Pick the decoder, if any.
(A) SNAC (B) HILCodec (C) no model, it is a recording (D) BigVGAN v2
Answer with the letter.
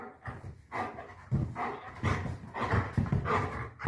C